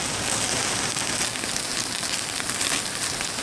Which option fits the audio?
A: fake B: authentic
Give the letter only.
B